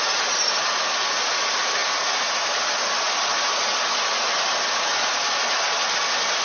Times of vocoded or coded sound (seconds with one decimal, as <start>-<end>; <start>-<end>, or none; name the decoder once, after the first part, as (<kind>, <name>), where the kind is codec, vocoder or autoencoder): none